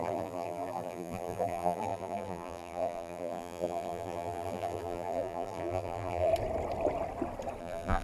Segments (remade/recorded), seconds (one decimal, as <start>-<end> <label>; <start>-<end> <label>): 0.0-6.3 remade; 6.3-7.6 recorded; 7.6-8.0 remade